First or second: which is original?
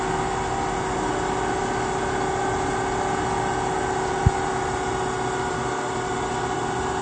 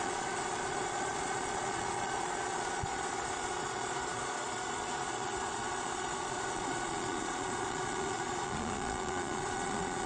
first